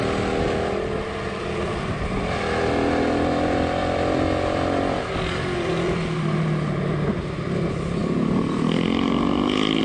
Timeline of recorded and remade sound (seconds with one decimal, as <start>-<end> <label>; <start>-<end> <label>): 0.0-9.8 recorded

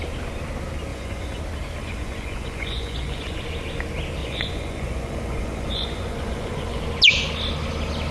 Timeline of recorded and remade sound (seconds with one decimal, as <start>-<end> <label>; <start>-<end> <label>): 0.0-0.9 recorded; 0.9-1.4 remade; 1.4-1.8 recorded; 1.8-3.4 remade; 3.4-4.2 recorded; 4.2-6.8 remade; 6.8-8.1 recorded